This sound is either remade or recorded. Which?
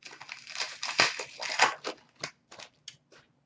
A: recorded